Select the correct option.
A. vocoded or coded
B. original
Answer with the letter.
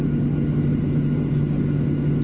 B